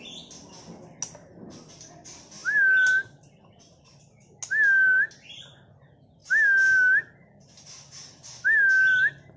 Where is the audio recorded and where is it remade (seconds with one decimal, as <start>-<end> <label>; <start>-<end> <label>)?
0.0-9.4 recorded